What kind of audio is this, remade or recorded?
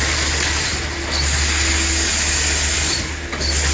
recorded